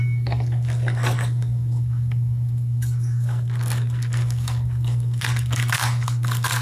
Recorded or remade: remade